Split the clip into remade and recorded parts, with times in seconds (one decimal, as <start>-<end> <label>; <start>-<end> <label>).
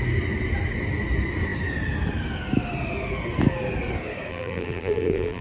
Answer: 0.0-4.3 recorded; 4.3-5.4 remade